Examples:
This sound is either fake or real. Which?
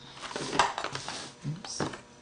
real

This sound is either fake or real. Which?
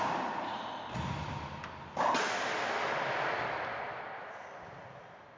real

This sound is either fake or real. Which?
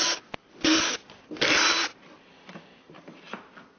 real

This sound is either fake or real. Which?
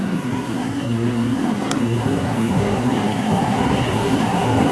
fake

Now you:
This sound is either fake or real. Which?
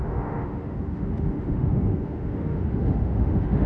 fake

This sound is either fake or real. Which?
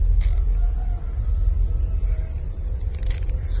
fake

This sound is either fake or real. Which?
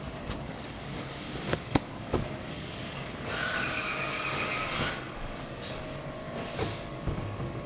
fake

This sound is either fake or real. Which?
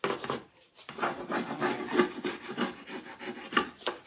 real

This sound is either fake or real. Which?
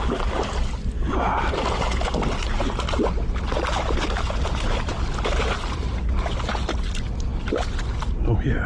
real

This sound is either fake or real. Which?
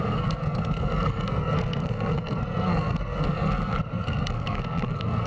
fake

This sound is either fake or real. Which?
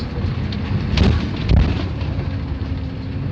real